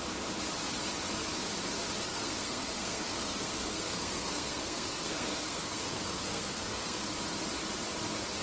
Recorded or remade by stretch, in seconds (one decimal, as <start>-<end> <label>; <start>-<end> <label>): 0.0-2.1 recorded; 2.1-7.1 remade; 7.1-8.4 recorded